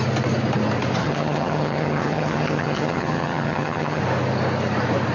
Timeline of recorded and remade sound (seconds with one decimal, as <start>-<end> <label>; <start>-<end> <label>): 0.0-1.0 recorded; 1.0-4.0 remade; 4.0-5.1 recorded